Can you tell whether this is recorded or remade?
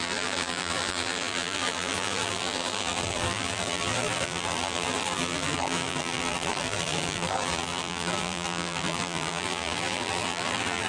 remade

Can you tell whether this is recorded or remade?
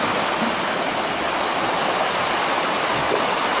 recorded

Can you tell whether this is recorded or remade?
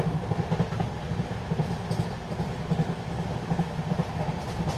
recorded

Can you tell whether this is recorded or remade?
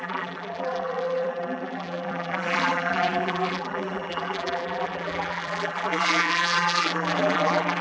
remade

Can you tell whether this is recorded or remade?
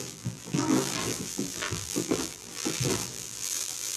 remade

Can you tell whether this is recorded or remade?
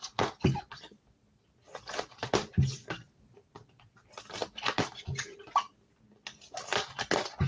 recorded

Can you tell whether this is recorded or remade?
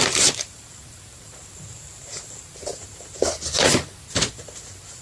remade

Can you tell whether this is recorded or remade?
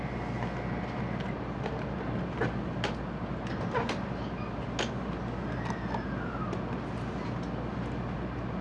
recorded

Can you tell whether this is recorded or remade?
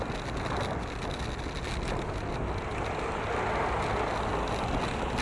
recorded